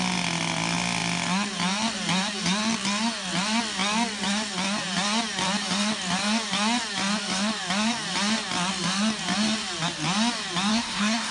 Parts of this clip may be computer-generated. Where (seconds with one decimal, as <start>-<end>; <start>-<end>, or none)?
10.7-11.3